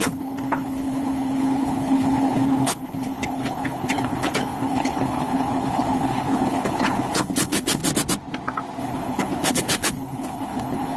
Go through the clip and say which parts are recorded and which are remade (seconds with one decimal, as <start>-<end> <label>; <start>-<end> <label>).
0.0-7.8 remade; 7.8-8.8 recorded; 8.8-11.0 remade